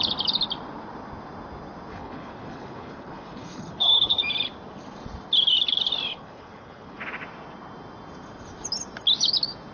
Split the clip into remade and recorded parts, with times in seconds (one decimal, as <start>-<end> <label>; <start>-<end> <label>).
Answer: 0.0-1.9 recorded; 1.9-4.2 remade; 4.2-6.1 recorded; 6.1-7.0 remade; 7.0-9.7 recorded